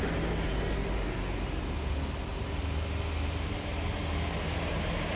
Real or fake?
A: real